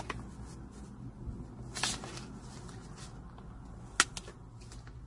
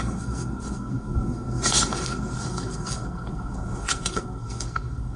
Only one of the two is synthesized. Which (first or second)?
second